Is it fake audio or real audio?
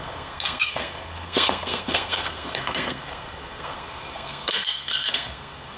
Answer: fake